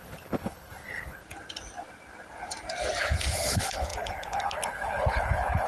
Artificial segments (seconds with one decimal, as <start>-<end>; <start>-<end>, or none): 0.0-1.2; 3.0-5.7